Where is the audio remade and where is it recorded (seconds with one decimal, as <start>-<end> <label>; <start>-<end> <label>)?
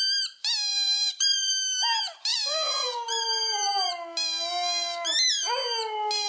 0.0-0.7 recorded; 0.7-1.5 remade; 1.5-2.3 recorded; 2.3-3.9 remade; 3.9-6.3 recorded